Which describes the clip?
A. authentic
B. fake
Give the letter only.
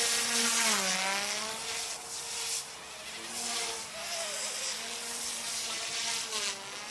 A